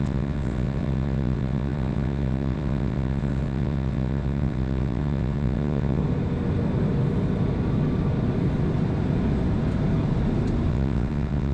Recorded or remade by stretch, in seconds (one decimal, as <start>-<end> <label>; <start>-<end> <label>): 0.0-6.0 remade; 6.0-10.7 recorded; 10.7-11.5 remade